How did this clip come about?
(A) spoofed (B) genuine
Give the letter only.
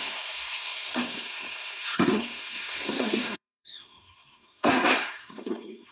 A